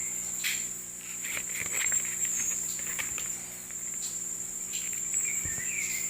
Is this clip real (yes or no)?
no